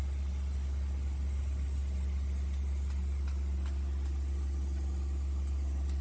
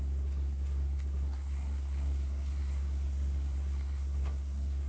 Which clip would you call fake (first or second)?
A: second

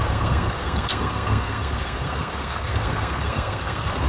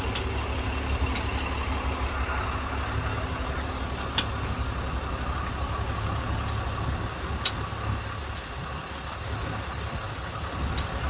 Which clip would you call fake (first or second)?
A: first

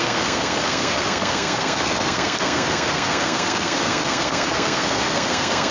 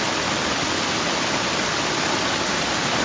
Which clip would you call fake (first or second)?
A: first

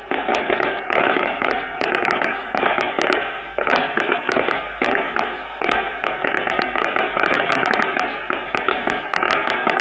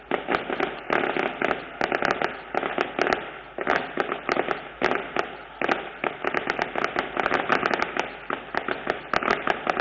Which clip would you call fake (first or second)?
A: first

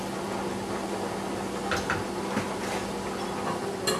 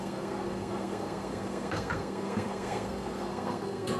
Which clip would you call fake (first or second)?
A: second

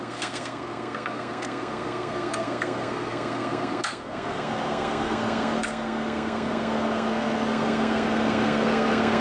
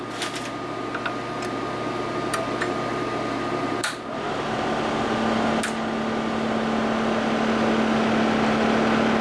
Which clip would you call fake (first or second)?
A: first